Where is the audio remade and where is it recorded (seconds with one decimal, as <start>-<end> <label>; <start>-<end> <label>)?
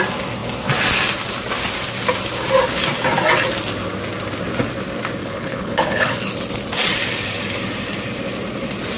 0.0-5.2 recorded; 5.2-6.1 remade; 6.1-9.0 recorded